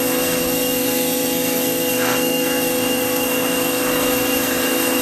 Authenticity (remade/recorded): remade